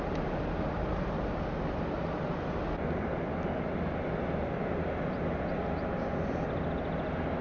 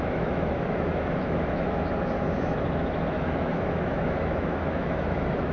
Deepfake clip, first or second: second